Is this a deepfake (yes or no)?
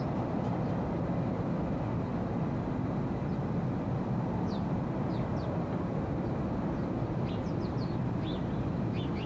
no